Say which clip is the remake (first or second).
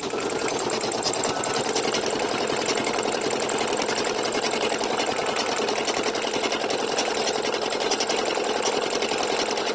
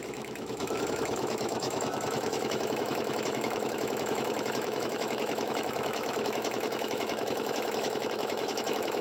second